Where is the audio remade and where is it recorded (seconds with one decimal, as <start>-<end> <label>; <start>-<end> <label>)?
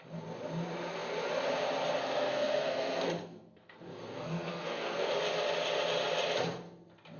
0.0-2.0 recorded; 2.0-5.1 remade; 5.1-7.2 recorded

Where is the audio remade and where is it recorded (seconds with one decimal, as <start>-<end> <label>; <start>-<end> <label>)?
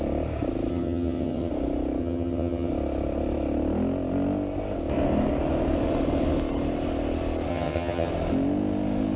0.0-0.7 recorded; 0.7-1.5 remade; 1.5-2.0 recorded; 2.0-2.7 remade; 2.7-7.5 recorded; 7.5-8.1 remade; 8.1-9.2 recorded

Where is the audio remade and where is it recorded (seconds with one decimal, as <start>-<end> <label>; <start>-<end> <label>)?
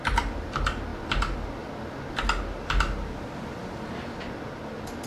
0.0-5.1 recorded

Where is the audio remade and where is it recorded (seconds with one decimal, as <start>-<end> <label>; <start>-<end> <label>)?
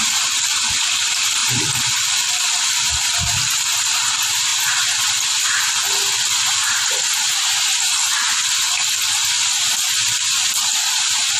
0.0-4.5 remade; 4.5-5.1 recorded; 5.1-11.4 remade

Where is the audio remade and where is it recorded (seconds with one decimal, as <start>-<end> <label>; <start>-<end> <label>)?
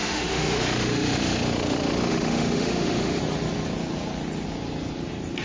0.0-3.2 remade; 3.2-5.4 recorded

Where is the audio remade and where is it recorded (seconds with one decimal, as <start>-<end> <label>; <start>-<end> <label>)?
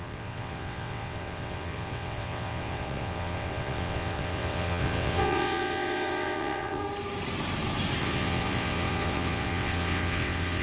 0.0-6.8 remade; 6.8-8.0 recorded; 8.0-10.6 remade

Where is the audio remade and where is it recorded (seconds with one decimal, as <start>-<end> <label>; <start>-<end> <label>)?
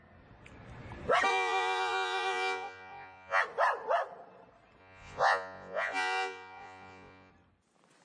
0.0-1.3 recorded; 1.3-3.4 remade; 3.4-4.8 recorded; 4.8-7.3 remade; 7.3-8.0 recorded